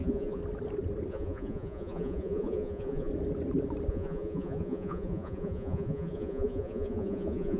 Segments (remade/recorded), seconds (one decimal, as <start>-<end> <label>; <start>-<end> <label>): 0.0-0.4 remade; 0.4-1.1 recorded; 1.1-3.1 remade; 3.1-3.9 recorded; 3.9-7.6 remade